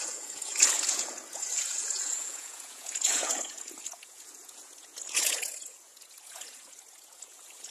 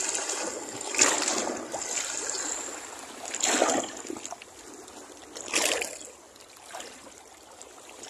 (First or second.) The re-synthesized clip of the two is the first